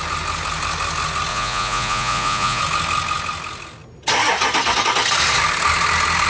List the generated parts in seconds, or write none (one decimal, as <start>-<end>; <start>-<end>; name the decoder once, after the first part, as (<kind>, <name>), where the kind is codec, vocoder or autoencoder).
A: 1.3-2.6 (vocoder, Vocos)